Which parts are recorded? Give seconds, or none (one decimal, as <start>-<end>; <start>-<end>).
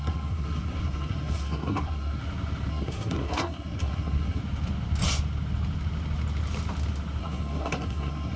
2.2-2.7; 4.4-7.2